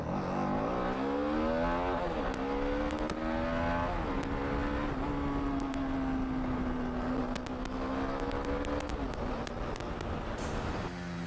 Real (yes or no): yes